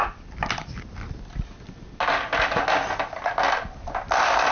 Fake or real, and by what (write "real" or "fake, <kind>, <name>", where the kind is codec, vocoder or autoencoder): real